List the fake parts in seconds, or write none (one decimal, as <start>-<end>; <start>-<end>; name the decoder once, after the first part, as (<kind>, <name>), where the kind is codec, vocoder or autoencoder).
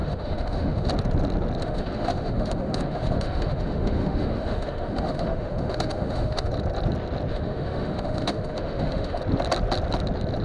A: 0.0-0.9 (autoencoder, DAC-VAE); 1.6-6.5; 7.3-9.2